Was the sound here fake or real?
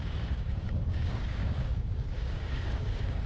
fake